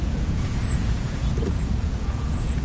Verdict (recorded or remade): remade